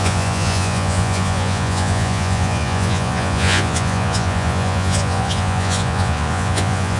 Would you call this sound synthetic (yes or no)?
yes